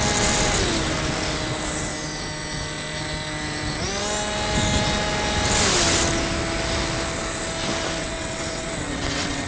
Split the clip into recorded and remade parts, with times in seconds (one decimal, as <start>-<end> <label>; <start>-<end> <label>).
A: 0.0-8.0 recorded; 8.0-9.5 remade